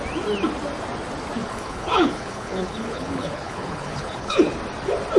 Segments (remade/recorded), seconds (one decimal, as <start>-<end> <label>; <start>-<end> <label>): 0.0-1.4 recorded; 1.4-4.5 remade; 4.5-5.2 recorded